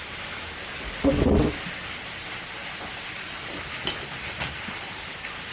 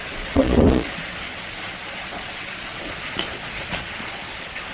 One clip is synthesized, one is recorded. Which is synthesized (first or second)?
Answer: second